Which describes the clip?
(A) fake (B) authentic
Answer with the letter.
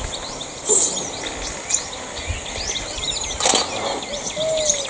B